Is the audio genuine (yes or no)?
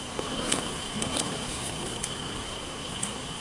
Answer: no